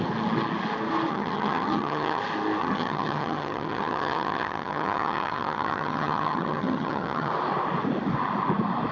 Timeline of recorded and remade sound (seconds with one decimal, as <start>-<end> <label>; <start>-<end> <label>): 0.0-1.1 recorded; 1.1-2.2 remade; 2.2-2.6 recorded; 2.6-7.3 remade; 7.3-8.9 recorded